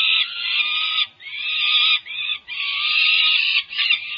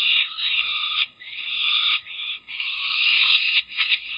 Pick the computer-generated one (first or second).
second